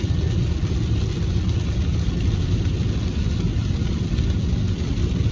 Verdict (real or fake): real